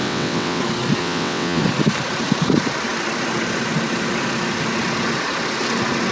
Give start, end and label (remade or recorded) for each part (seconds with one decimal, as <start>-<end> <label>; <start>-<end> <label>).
0.0-0.6 remade; 0.6-1.0 recorded; 1.0-1.6 remade; 1.6-6.1 recorded